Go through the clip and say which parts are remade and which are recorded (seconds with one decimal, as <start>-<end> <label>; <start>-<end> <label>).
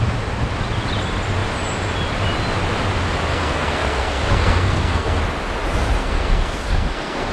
0.0-3.3 recorded; 3.3-5.2 remade; 5.2-6.0 recorded; 6.0-7.3 remade